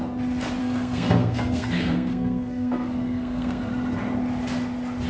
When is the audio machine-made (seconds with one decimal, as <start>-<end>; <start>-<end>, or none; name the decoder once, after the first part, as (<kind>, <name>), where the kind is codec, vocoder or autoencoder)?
0.6-3.7 (codec, SNAC)